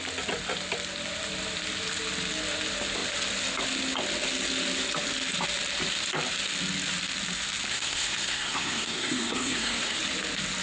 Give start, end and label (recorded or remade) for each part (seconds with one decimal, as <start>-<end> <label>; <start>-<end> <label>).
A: 0.0-7.7 recorded; 7.7-10.0 remade; 10.0-10.6 recorded